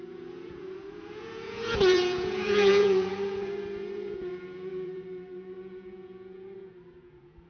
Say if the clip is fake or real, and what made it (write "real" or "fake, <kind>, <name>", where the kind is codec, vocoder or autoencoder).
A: fake, vocoder, Vocos